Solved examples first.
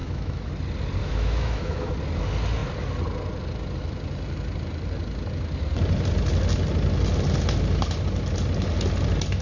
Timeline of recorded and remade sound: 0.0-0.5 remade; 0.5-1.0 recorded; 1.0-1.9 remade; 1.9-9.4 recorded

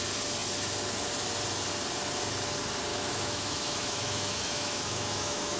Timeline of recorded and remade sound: 0.0-2.9 recorded; 2.9-5.6 remade

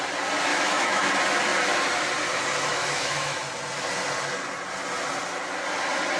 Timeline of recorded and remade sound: 0.0-0.5 recorded; 0.5-1.1 remade; 1.1-2.7 recorded; 2.7-3.4 remade; 3.4-6.2 recorded

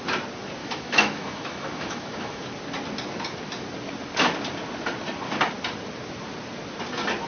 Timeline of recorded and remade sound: 0.0-0.6 recorded; 0.6-2.4 remade; 2.4-7.3 recorded

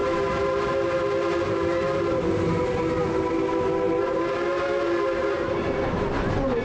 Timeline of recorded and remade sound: 0.0-6.6 recorded

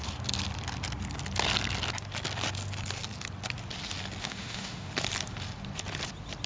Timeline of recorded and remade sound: 0.0-4.2 recorded; 4.2-4.9 remade; 4.9-6.5 recorded

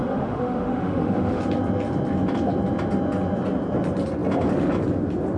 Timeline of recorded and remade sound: 0.0-1.4 remade; 1.4-5.4 recorded

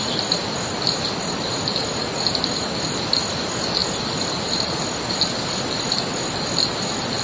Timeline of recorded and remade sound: 0.0-7.2 recorded